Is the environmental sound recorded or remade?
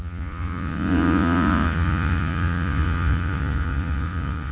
remade